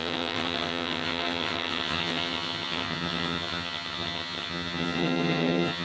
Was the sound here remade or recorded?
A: remade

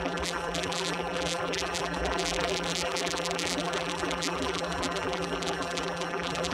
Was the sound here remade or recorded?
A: remade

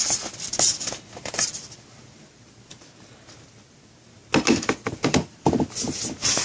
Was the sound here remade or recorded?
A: recorded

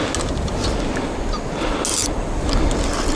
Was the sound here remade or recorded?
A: recorded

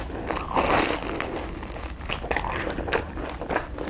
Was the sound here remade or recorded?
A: recorded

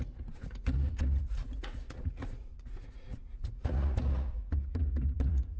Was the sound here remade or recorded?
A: remade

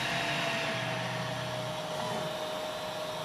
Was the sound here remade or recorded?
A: recorded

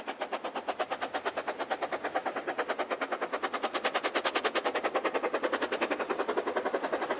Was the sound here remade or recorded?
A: recorded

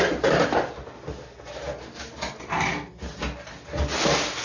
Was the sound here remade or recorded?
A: recorded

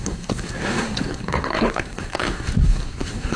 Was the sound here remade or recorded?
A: remade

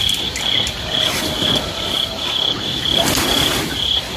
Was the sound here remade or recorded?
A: recorded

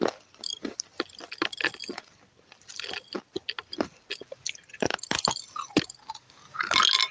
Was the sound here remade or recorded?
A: recorded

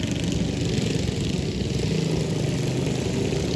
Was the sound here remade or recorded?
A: recorded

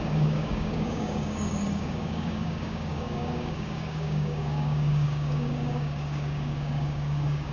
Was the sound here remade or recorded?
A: remade